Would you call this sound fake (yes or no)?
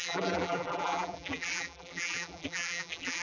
yes